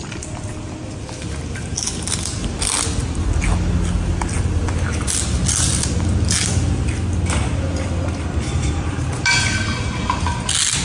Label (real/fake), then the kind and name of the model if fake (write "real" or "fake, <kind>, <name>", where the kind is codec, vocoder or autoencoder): real